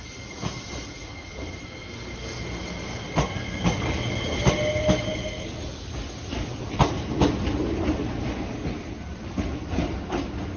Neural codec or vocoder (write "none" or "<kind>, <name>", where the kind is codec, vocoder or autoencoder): none